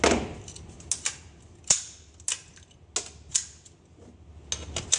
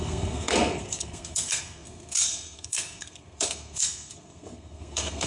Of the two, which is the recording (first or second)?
first